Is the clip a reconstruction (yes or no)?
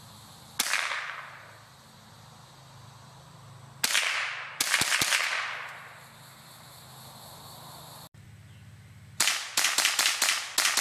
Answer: no